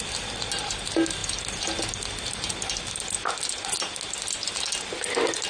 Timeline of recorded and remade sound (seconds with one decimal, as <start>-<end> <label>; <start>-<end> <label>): 0.0-5.5 recorded